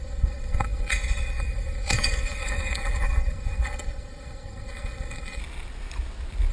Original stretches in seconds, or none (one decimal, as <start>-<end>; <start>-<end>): 5.4-6.5